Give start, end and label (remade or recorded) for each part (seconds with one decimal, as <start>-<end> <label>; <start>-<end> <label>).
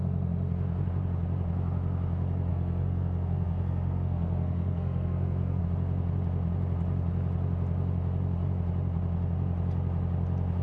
0.0-2.5 recorded; 2.5-5.6 remade; 5.6-10.6 recorded